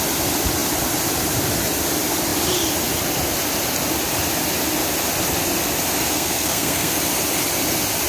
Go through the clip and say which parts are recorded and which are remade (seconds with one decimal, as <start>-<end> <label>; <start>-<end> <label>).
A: 0.0-6.0 recorded; 6.0-7.0 remade; 7.0-8.1 recorded